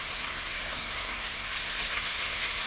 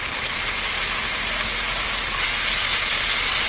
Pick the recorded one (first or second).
second